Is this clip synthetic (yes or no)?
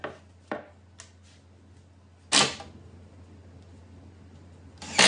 no